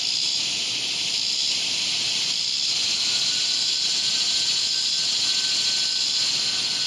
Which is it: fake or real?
real